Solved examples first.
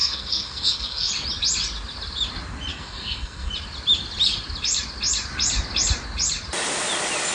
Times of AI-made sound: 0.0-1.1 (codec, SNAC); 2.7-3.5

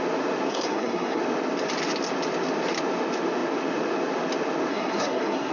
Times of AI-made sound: 0.5-1.2 (codec, SNAC); 4.7-5.5

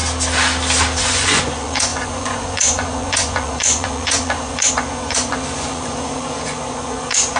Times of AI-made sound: 1.0-7.4 (vocoder, Vocos)

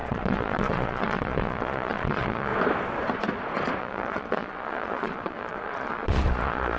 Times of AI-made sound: 0.0-2.5 (vocoder, Vocos); 3.8-6.8

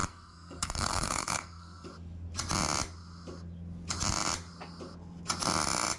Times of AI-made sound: 0.0-1.9 (codec, SNAC)

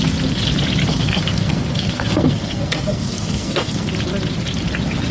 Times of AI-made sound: 0.9-3.9 (codec, SNAC)